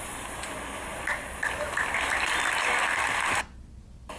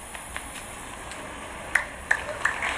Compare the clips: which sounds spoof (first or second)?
second